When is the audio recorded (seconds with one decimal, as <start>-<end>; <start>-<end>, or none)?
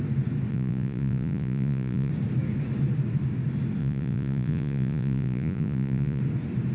0.0-0.5; 2.1-3.8; 6.2-6.7